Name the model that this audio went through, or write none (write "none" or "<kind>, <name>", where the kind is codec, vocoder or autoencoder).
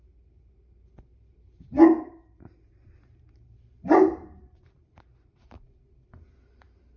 vocoder, BigVGAN v2